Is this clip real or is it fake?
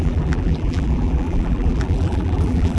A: fake